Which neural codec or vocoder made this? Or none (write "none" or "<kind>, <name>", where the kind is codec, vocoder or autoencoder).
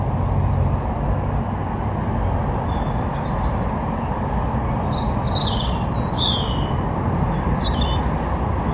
none